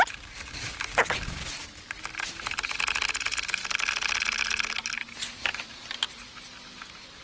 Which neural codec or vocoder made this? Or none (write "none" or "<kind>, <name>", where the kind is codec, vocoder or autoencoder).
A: none